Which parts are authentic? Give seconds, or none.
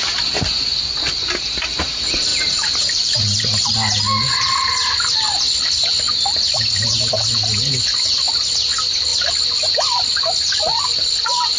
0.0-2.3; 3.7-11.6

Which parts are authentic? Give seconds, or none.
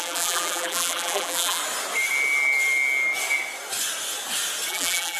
1.6-4.7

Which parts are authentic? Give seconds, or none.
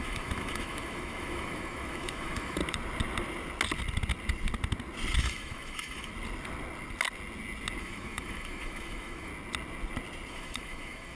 2.6-5.2; 6.1-7.8; 9.3-10.3